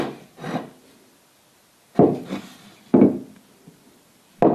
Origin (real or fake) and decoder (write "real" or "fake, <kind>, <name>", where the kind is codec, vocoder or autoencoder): real